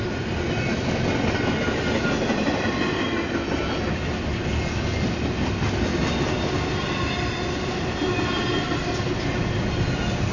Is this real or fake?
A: real